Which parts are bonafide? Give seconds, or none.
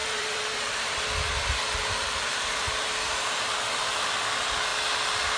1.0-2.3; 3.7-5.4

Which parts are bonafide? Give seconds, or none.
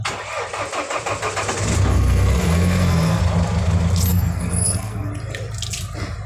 0.0-1.9; 3.2-4.1; 5.1-6.3